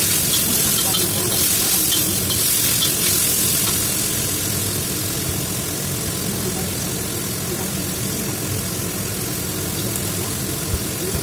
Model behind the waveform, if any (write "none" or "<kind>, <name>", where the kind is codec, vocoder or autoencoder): none